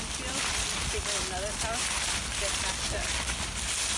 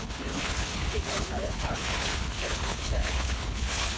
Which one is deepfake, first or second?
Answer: second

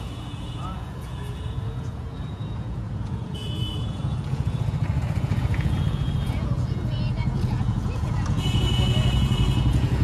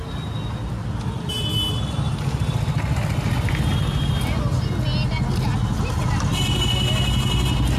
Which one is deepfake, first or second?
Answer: first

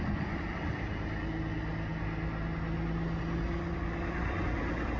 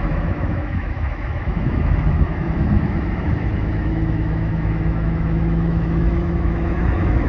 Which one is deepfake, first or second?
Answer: second